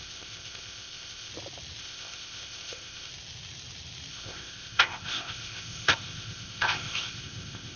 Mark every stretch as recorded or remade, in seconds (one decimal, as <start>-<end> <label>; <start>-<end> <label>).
0.0-1.3 remade; 1.3-1.8 recorded; 1.8-3.1 remade; 3.1-4.1 recorded; 4.1-7.8 remade